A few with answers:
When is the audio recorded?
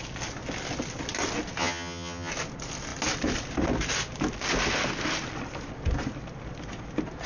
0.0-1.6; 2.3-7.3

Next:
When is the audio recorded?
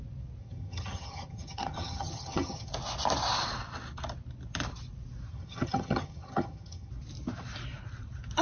0.0-0.4; 2.7-5.3; 6.9-8.4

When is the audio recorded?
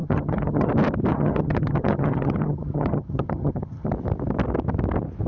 0.7-1.1; 3.9-5.3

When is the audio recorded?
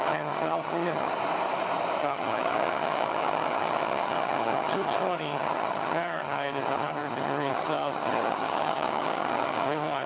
1.1-2.0